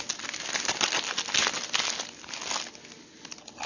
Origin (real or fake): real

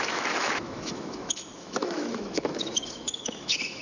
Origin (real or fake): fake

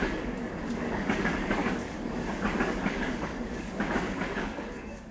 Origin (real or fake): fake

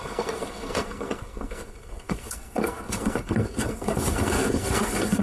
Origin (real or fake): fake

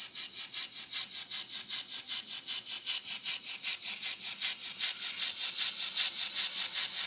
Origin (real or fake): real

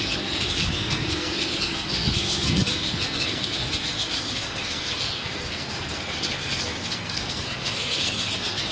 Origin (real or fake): fake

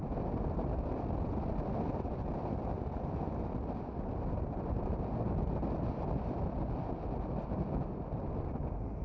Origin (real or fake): real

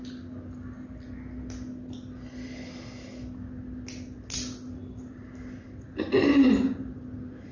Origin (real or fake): real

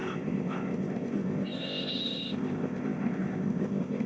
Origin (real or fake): fake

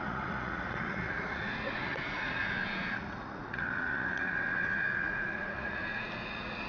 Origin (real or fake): fake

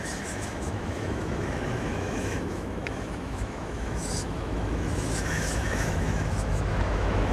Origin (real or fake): fake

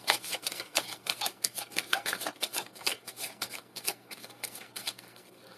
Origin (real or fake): fake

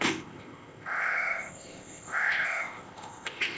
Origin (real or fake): fake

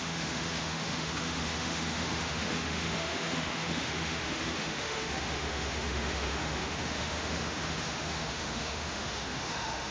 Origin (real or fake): fake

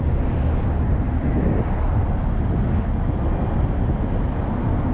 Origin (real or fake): real